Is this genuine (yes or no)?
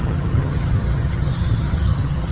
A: no